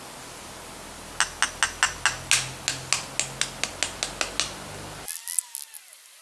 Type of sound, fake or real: real